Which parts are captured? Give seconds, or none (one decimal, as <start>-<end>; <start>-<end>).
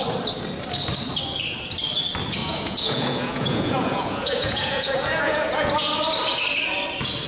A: 0.0-2.4; 5.7-7.3